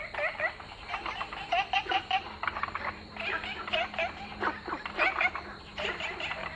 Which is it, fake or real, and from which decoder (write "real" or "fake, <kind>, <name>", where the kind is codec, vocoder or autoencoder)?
real